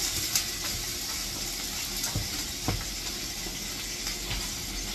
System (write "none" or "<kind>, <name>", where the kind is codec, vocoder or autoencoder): none